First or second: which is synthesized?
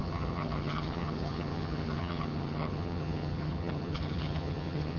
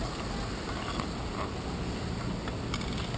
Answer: first